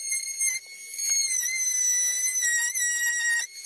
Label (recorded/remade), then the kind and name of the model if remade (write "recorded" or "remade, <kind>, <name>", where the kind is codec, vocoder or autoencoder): recorded